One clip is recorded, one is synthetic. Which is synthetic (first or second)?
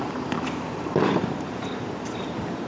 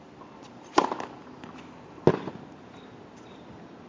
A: first